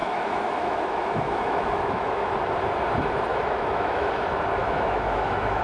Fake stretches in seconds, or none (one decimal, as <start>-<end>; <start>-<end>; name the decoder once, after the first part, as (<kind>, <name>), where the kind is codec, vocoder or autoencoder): 0.0-2.3 (autoencoder, DAC-VAE); 3.3-4.1; 4.6-5.6